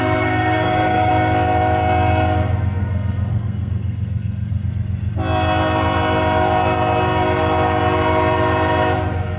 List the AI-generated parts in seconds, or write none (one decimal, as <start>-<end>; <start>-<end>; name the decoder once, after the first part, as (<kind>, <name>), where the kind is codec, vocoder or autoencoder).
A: 0.0-1.1 (codec, SNAC); 2.8-4.7